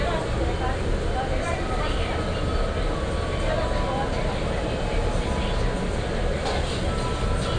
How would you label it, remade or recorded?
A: recorded